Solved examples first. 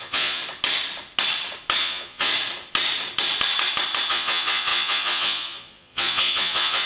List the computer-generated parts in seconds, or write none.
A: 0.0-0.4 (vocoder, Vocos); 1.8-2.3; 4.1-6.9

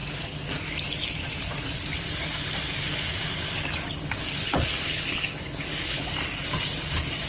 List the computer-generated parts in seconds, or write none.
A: 4.4-6.0 (codec, HILCodec)

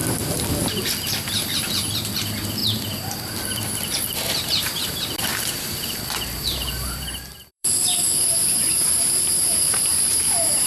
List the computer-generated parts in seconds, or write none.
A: 0.6-2.6 (vocoder, BigVGAN v2); 3.4-10.7

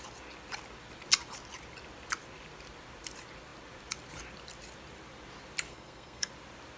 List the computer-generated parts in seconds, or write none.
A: 5.7-6.3 (codec, SNAC)